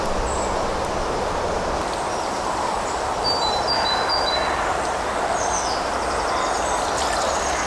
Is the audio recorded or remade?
recorded